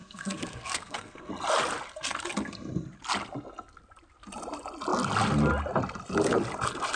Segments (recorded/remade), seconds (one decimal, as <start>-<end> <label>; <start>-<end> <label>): 0.0-1.3 remade; 1.3-7.0 recorded